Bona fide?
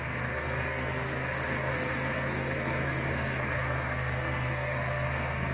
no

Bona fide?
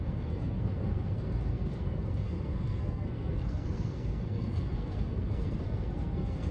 no